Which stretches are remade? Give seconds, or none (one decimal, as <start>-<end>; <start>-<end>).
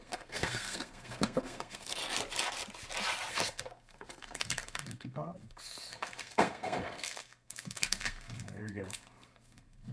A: 0.0-2.0; 3.3-9.9